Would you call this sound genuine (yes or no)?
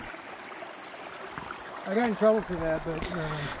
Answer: yes